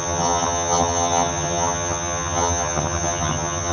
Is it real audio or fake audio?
fake